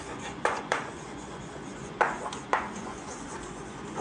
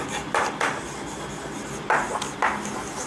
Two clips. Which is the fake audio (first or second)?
first